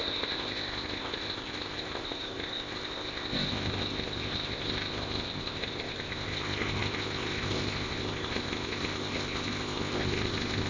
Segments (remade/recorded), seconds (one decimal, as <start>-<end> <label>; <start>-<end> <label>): 0.0-10.7 remade